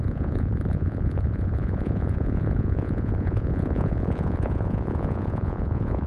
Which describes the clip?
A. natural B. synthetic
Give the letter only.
B